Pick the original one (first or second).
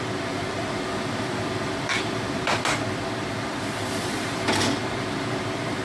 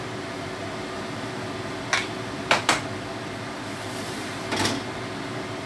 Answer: second